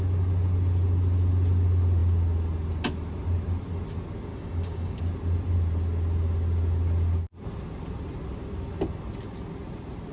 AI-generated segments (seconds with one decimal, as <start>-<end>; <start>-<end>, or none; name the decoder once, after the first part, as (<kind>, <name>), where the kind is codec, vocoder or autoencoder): 4.3-5.0 (codec, DAC)